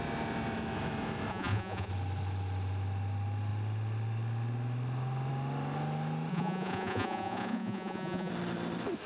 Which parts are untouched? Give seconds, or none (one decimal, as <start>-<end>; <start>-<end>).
0.0-1.3; 1.9-6.3; 8.3-9.1